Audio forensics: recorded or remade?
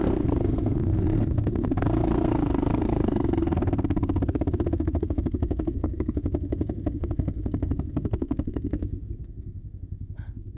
remade